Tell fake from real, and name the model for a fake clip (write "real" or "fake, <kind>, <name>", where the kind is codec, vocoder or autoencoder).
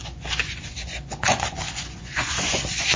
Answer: fake, vocoder, Vocos